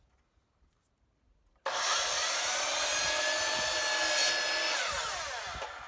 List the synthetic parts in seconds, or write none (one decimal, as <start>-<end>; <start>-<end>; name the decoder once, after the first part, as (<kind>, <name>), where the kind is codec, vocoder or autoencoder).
none